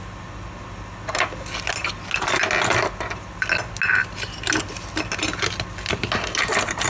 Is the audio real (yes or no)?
yes